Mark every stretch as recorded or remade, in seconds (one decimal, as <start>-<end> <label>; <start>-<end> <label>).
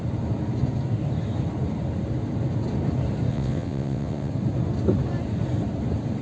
0.0-3.3 recorded; 3.3-4.3 remade; 4.3-6.2 recorded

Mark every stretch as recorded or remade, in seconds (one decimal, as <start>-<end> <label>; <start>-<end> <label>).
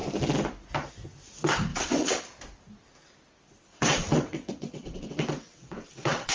0.0-1.7 recorded; 1.7-2.2 remade; 2.2-3.7 recorded; 3.7-6.3 remade